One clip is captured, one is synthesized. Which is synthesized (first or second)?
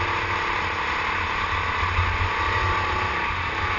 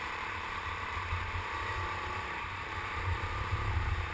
second